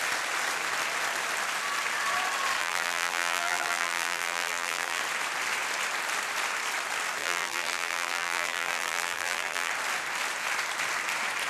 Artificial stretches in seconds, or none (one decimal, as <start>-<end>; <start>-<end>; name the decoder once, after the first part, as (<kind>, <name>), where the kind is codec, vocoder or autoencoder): 2.6-5.0 (vocoder, BigVGAN v2); 7.2-9.7